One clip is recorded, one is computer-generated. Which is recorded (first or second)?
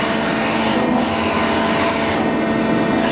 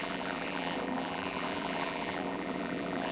first